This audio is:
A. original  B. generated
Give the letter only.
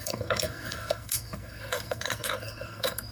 B